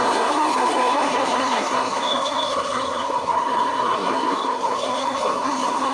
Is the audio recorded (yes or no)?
no